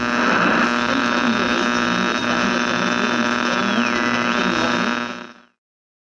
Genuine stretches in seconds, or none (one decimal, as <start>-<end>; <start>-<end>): 0.0-6.1